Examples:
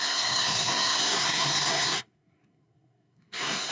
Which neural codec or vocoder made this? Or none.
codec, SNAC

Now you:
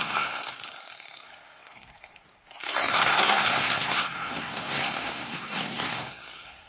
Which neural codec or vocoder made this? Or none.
codec, SNAC